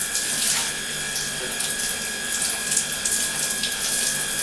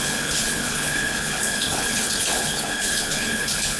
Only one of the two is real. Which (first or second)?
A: first